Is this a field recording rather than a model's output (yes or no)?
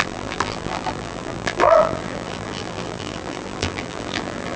no